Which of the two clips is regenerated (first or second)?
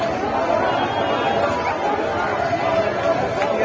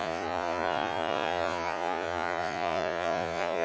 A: second